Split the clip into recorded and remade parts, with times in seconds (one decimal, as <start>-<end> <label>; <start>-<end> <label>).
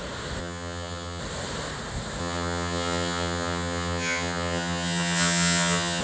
0.0-0.4 recorded; 0.4-1.2 remade; 1.2-2.2 recorded; 2.2-6.0 remade